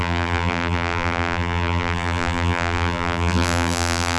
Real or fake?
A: fake